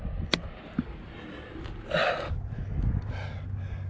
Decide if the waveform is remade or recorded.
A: recorded